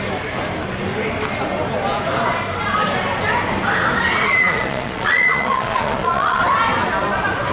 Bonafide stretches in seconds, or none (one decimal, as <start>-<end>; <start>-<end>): 0.0-4.3; 6.4-7.5

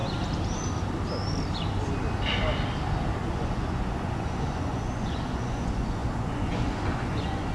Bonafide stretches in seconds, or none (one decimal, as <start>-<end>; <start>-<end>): 0.0-3.3